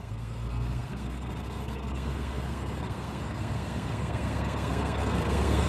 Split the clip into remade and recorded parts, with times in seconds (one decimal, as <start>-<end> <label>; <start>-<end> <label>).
0.0-5.7 remade